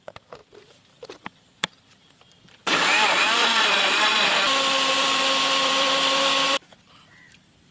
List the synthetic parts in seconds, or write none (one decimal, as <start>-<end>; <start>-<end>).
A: 0.0-7.7